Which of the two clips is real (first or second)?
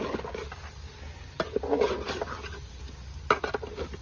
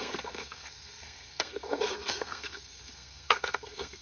first